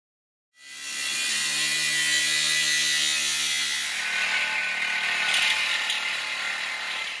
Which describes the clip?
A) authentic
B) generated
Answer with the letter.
A